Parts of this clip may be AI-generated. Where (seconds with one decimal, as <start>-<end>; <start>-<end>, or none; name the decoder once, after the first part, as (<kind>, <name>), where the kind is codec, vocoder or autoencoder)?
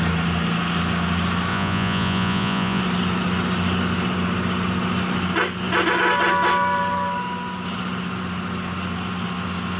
1.5-2.8 (vocoder, Vocos)